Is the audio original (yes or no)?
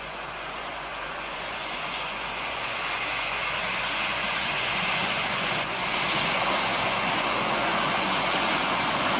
no